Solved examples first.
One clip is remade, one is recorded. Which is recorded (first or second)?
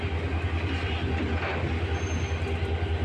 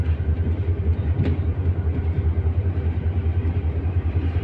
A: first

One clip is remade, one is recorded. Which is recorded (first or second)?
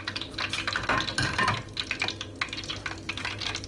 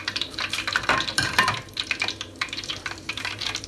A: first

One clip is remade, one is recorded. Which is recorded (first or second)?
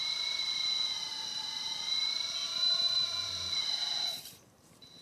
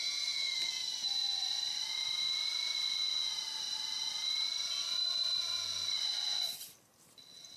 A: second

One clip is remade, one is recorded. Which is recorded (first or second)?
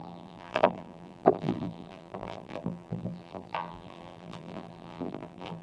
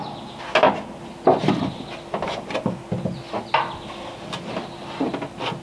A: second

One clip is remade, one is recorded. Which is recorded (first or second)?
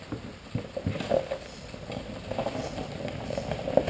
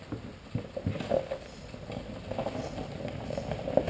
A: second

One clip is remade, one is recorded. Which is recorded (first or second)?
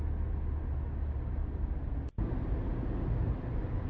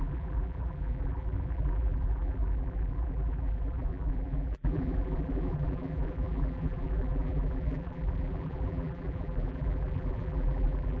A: first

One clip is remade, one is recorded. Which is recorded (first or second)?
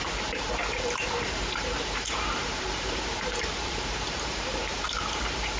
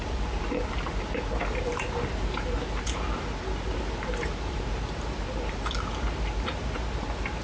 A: second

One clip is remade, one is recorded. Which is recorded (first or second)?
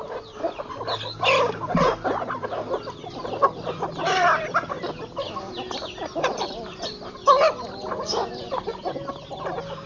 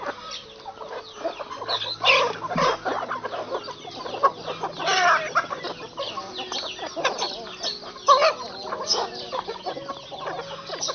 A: second